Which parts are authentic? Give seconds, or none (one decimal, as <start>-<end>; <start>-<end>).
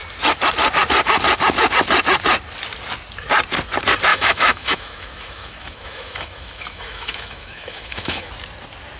0.0-4.1; 8.3-9.0